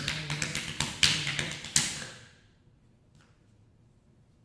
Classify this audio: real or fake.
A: real